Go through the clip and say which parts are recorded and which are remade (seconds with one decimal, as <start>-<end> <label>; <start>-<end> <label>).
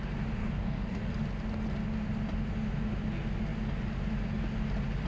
0.0-0.4 recorded; 0.4-1.1 remade; 1.1-5.1 recorded